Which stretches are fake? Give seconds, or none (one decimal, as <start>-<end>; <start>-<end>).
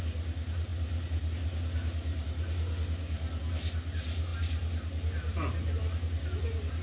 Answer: none